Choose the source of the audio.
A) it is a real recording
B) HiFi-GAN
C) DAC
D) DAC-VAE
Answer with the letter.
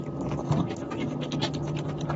A